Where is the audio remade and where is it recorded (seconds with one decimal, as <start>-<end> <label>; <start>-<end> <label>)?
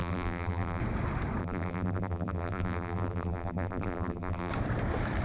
0.0-0.8 remade; 0.8-1.4 recorded; 1.4-4.5 remade; 4.5-5.2 recorded